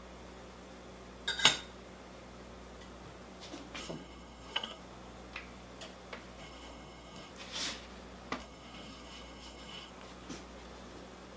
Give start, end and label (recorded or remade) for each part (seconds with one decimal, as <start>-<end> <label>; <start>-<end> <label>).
0.0-3.8 recorded; 3.8-4.8 remade; 4.8-6.4 recorded; 6.4-7.3 remade; 7.3-8.4 recorded; 8.4-9.9 remade; 9.9-11.4 recorded